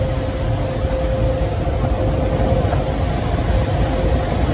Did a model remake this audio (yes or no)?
no